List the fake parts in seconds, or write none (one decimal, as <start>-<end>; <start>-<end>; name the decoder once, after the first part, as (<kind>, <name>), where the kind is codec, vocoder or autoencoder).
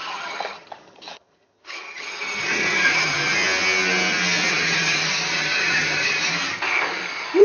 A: 0.0-3.2 (vocoder, HiFi-GAN); 4.5-6.2